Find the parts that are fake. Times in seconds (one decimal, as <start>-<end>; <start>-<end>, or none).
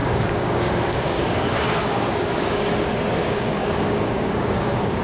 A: 0.0-2.7; 3.2-5.0